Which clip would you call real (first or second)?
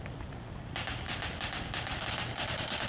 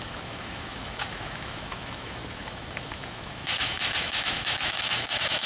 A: first